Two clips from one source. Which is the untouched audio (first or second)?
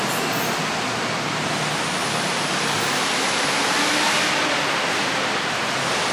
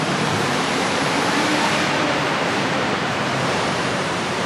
first